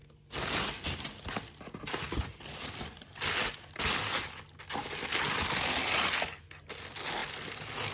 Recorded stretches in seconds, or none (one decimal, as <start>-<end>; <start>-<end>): 0.0-7.9